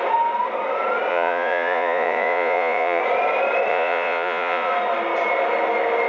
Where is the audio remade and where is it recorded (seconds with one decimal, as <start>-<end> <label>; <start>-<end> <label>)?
0.0-1.1 recorded; 1.1-3.0 remade; 3.0-3.7 recorded; 3.7-4.7 remade; 4.7-6.1 recorded

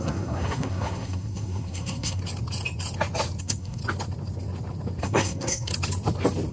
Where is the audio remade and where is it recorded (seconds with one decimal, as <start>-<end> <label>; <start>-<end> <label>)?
0.0-2.2 remade; 2.2-3.4 recorded; 3.4-3.8 remade; 3.8-5.0 recorded; 5.0-5.7 remade; 5.7-6.5 recorded